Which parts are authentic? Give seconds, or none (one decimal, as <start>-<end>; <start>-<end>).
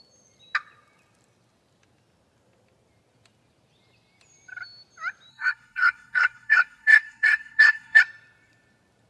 0.0-5.3; 8.0-9.1